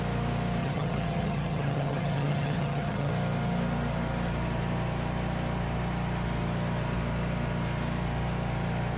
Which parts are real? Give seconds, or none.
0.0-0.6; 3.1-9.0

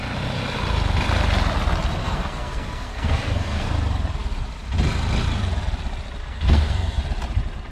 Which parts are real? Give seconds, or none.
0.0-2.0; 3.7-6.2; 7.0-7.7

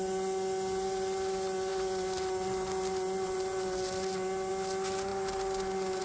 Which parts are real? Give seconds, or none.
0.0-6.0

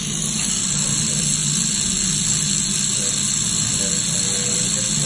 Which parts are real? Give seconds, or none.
0.0-5.1